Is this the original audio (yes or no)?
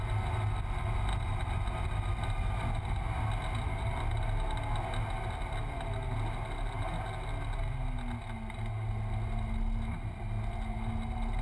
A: yes